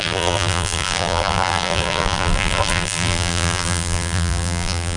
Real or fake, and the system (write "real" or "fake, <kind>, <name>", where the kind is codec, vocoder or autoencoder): fake, vocoder, BigVGAN v2